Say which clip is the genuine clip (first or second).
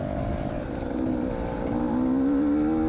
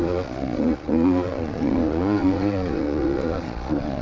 first